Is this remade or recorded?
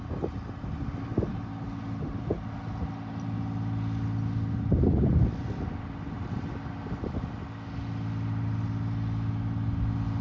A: recorded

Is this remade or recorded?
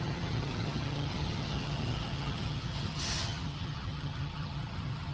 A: remade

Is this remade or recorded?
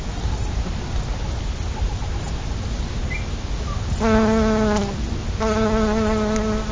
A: recorded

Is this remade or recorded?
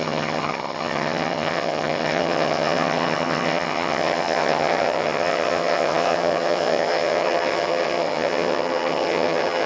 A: remade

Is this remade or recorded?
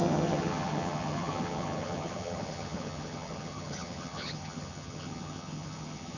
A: remade